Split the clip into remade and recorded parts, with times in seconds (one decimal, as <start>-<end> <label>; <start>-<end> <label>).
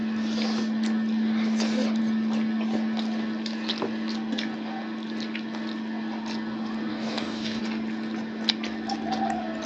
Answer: 0.0-6.9 recorded; 6.9-7.6 remade; 7.6-9.7 recorded